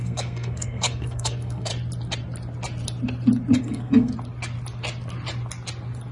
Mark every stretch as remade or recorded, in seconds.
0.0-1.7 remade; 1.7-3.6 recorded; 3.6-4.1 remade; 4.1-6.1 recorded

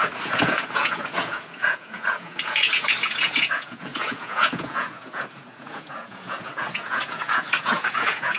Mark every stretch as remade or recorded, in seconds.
0.0-8.4 remade

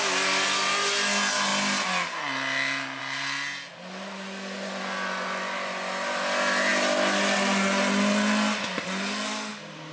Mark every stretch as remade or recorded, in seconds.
0.0-9.9 recorded

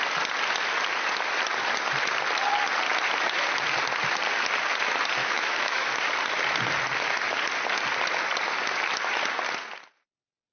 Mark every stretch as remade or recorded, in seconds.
0.0-5.2 recorded; 5.2-5.9 remade; 5.9-10.5 recorded